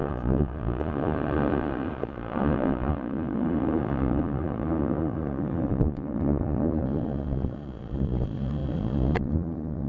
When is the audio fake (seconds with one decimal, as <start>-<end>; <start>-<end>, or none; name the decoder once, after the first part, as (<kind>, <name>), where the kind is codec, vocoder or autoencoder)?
0.0-9.9 (vocoder, Vocos)